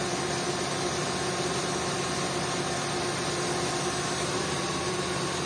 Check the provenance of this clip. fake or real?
real